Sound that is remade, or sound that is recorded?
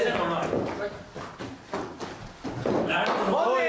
recorded